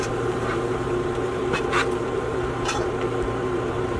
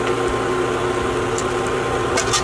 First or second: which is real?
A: second